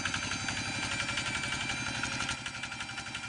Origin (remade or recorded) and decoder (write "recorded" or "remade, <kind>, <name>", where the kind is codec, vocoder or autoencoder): recorded